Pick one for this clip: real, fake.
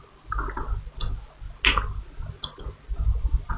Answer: real